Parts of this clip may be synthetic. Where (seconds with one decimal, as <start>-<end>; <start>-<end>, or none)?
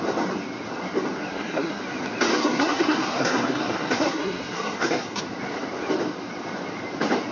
1.3-1.8; 2.3-5.2